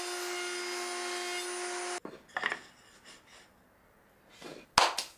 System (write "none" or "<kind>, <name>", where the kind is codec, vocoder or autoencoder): none